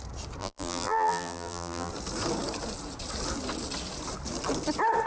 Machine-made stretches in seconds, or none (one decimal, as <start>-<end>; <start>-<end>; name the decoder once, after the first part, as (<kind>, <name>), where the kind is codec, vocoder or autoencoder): 0.4-1.9 (vocoder, BigVGAN v2)